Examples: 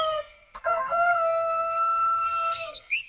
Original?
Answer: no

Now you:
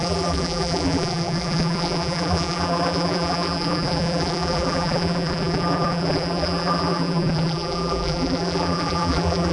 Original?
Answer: no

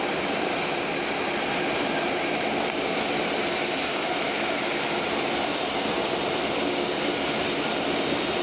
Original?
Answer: yes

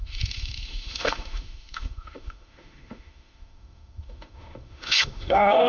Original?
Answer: no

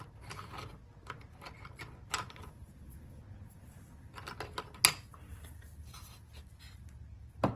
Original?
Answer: yes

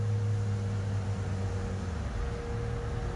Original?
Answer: yes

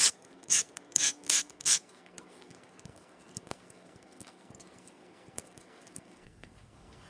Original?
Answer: no